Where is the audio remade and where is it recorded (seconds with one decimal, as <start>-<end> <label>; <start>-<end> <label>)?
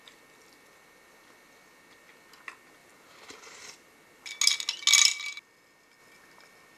0.0-2.8 recorded; 2.8-3.6 remade; 3.6-6.8 recorded